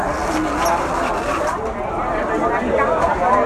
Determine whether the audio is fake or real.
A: real